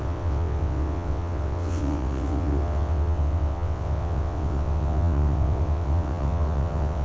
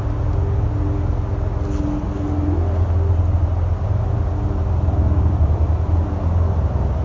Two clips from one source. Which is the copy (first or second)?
first